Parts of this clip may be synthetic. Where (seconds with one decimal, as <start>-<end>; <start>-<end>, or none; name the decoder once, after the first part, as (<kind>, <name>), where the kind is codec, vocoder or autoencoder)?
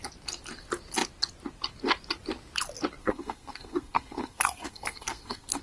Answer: 3.0-5.6 (codec, SNAC)